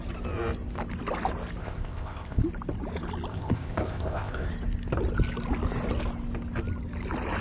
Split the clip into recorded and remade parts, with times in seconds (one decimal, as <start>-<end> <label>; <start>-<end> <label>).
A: 0.0-1.6 recorded; 1.6-2.4 remade; 2.4-3.3 recorded; 3.3-4.5 remade; 4.5-7.4 recorded